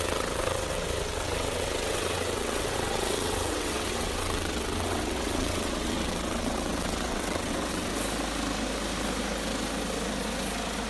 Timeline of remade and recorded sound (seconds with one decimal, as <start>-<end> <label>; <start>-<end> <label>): 0.0-7.9 remade; 7.9-10.9 recorded